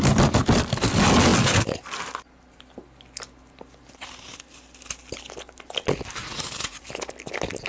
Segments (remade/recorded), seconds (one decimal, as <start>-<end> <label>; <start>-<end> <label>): 0.0-6.2 recorded; 6.2-6.8 remade; 6.8-7.7 recorded